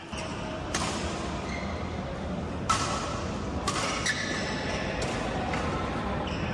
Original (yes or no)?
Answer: yes